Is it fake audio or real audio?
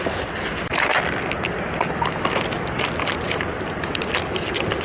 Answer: real